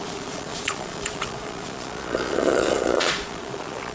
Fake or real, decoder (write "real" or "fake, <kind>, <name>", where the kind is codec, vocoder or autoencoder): fake, vocoder, Vocos